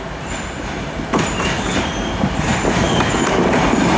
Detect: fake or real real